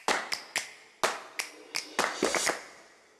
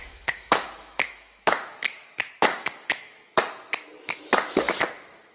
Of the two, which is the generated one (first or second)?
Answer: second